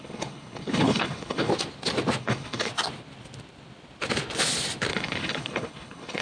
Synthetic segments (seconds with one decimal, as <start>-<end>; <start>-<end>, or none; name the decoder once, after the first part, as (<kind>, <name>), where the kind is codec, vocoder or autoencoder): 0.0-1.5 (codec, HILCodec); 2.2-2.7; 4.9-6.2